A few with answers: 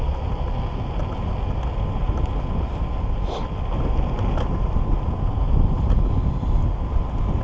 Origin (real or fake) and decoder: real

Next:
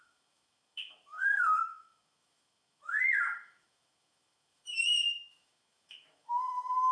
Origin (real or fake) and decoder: fake, autoencoder, DAC-VAE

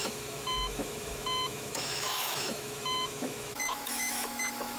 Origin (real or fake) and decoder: fake, autoencoder, DAC-VAE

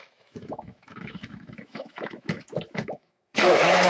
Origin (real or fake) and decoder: fake, autoencoder, DAC-VAE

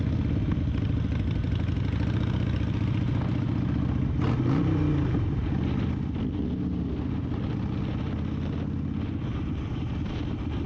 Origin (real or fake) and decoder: real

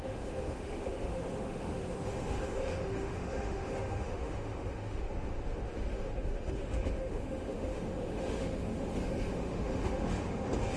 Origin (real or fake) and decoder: fake, autoencoder, DAC-VAE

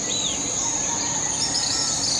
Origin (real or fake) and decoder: real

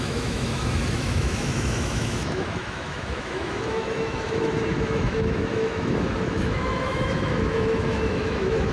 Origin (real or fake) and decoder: fake, autoencoder, DAC-VAE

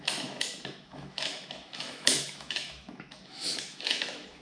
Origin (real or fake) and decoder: fake, autoencoder, DAC-VAE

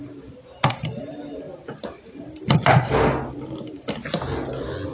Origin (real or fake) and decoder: real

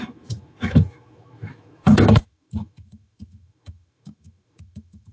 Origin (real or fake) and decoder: fake, autoencoder, DAC-VAE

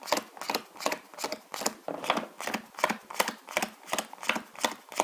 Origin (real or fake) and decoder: real